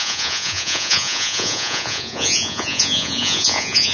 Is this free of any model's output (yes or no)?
no